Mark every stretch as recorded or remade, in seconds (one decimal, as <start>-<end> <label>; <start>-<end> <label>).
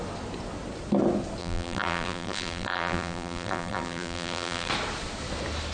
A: 0.0-1.4 recorded; 1.4-4.7 remade; 4.7-5.7 recorded